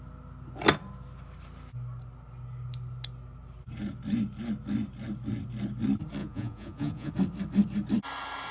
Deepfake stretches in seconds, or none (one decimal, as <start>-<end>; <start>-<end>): 6.2-7.1